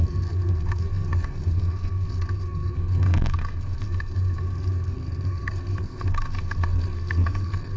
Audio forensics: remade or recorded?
remade